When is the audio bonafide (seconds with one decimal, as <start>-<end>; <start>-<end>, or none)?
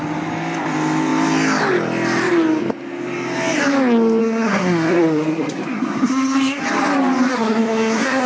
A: 0.0-4.2; 6.6-7.3